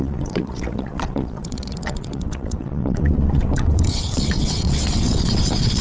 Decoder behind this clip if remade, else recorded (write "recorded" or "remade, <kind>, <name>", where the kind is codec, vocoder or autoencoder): remade, vocoder, WaveNeXt